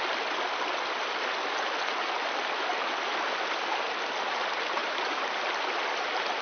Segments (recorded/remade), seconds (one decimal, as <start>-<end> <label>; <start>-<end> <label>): 0.0-4.8 recorded; 4.8-5.5 remade; 5.5-6.4 recorded